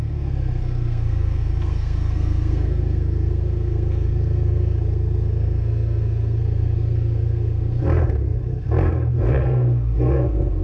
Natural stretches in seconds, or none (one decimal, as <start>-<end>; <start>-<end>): none